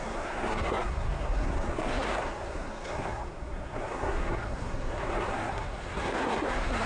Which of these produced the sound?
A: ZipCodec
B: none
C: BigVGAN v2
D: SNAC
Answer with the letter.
D